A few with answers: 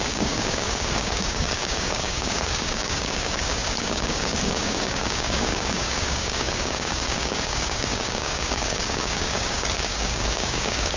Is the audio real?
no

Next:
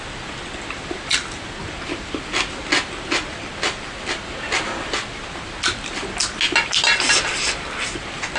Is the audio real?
yes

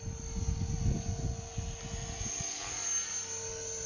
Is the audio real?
yes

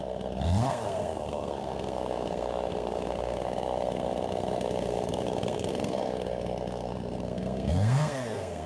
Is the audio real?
no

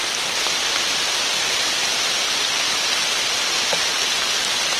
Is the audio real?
no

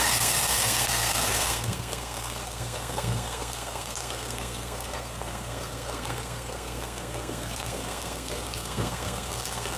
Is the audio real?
no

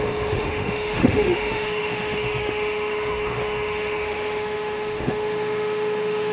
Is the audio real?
no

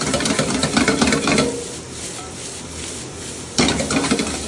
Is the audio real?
no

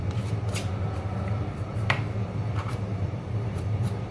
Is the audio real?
no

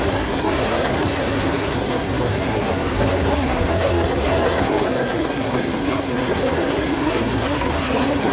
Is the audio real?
no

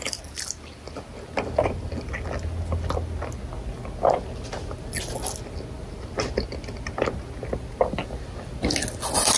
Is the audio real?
yes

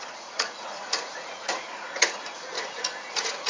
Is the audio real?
no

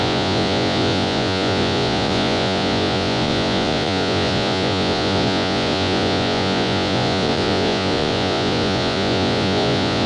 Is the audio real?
no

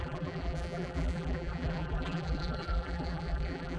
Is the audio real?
no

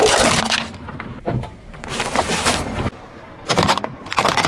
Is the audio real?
yes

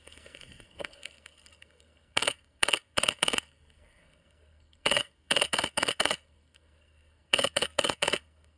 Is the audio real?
no